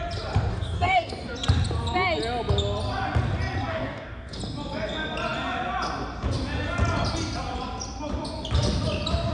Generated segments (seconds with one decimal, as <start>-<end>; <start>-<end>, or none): 0.5-1.1; 3.7-4.4

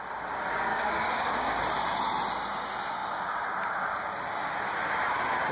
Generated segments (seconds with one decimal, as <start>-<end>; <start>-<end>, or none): 0.7-1.6

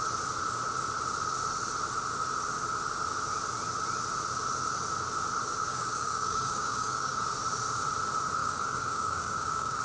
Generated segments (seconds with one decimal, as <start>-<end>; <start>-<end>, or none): 5.7-7.2; 8.4-9.8